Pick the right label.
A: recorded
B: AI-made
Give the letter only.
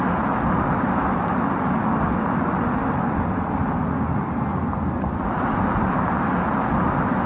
A